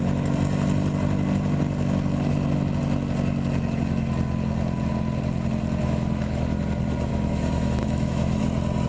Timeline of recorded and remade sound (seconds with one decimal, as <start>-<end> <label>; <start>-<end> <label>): 0.0-5.8 recorded; 5.8-6.6 remade; 6.6-7.1 recorded; 7.1-8.4 remade; 8.4-8.9 recorded